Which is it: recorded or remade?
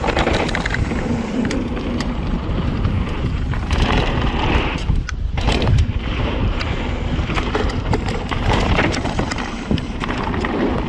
remade